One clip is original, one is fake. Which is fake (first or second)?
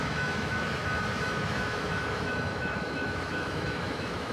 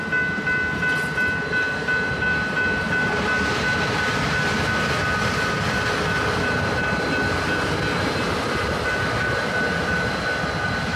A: first